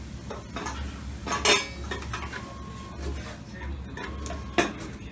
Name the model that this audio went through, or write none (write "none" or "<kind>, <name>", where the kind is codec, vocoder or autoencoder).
none